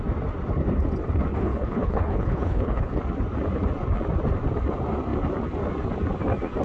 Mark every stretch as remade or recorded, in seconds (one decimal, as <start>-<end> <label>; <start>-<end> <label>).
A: 0.0-1.3 recorded; 1.3-2.9 remade; 2.9-6.6 recorded